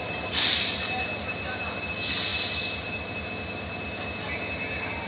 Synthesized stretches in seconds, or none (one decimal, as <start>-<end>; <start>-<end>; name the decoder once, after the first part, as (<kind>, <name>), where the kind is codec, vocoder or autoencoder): none